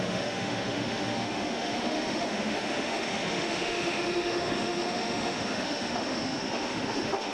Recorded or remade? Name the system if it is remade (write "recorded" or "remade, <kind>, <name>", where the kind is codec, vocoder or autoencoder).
remade, autoencoder, DAC-VAE